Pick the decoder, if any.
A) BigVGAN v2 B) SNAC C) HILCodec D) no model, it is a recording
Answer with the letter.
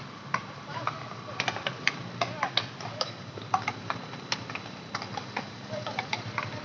D